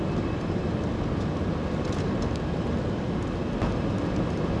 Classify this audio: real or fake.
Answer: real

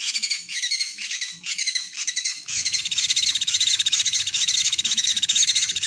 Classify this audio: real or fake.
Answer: fake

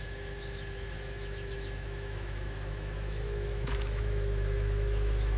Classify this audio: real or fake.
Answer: fake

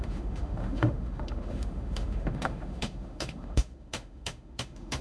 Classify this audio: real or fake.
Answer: fake